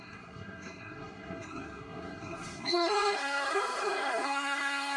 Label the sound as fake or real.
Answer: fake